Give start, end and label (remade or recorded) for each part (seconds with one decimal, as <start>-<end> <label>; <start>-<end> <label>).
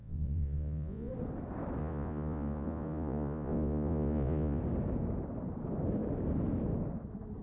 0.0-1.1 remade; 1.1-1.8 recorded; 1.8-4.6 remade; 4.6-7.4 recorded